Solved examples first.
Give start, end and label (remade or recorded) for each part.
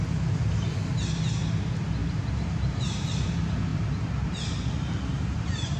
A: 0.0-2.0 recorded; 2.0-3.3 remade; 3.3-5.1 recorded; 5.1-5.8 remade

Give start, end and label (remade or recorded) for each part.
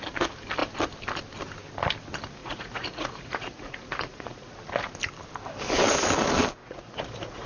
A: 0.0-2.4 recorded; 2.4-4.5 remade; 4.5-6.6 recorded; 6.6-7.5 remade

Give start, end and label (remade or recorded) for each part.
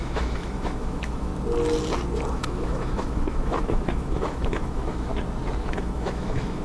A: 0.0-1.3 remade; 1.3-2.3 recorded; 2.3-5.1 remade; 5.1-5.6 recorded; 5.6-6.6 remade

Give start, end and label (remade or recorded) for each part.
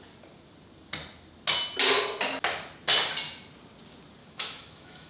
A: 0.0-4.2 recorded; 4.2-5.1 remade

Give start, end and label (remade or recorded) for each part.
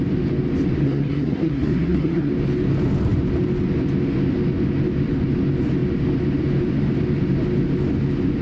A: 0.0-0.8 recorded; 0.8-2.3 remade; 2.3-8.4 recorded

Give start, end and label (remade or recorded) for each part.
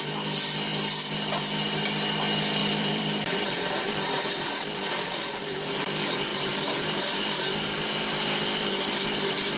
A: 0.0-2.6 recorded; 2.6-4.9 remade; 4.9-6.3 recorded; 6.3-9.6 remade